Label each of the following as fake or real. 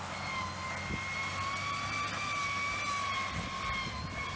real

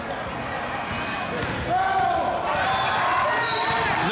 real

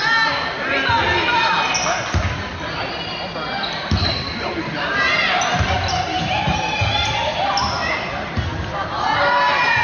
real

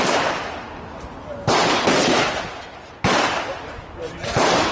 real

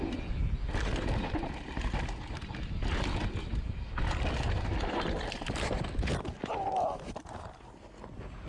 real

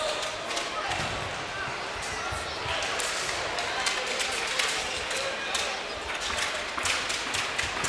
real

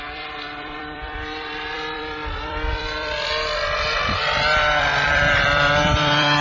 fake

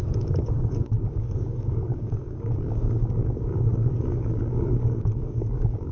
fake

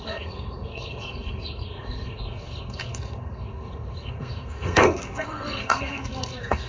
fake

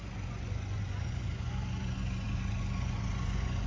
fake